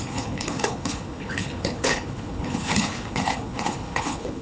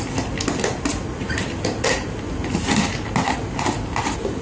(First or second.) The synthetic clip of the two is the first